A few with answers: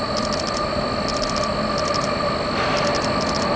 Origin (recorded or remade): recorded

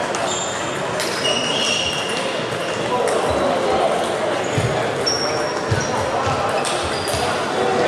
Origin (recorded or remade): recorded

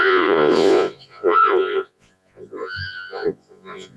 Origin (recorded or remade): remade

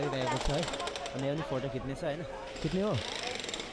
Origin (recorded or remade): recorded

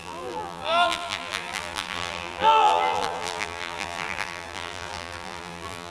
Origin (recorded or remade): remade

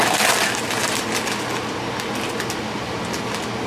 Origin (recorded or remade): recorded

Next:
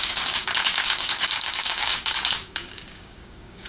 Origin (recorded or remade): remade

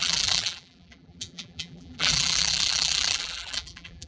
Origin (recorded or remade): remade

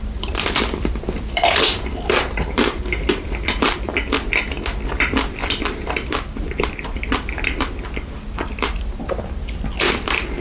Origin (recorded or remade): remade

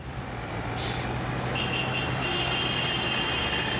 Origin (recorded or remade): recorded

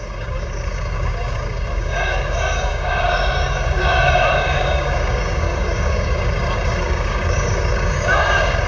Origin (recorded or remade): remade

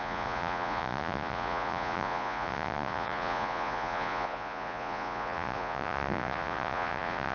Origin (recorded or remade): remade